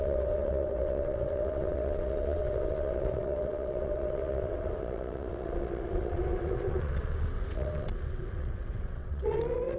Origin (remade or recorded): remade